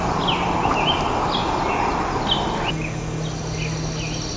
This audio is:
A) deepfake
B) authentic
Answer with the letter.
B